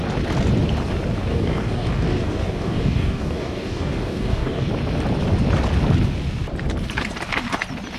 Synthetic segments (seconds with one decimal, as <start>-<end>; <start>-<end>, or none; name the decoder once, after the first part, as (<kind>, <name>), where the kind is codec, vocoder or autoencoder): 1.3-4.7 (codec, DAC)